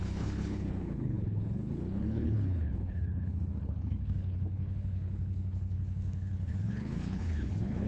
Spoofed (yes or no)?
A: yes